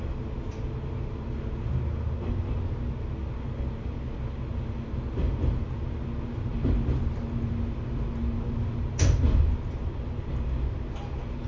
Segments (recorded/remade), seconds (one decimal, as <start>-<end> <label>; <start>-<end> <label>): 0.0-11.5 recorded